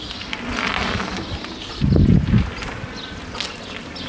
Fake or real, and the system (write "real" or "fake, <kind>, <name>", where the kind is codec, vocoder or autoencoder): real